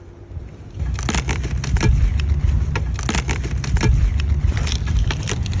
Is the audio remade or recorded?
recorded